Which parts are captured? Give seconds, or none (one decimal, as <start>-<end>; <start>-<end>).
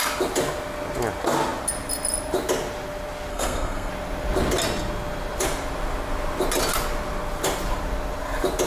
0.0-3.3; 3.9-8.7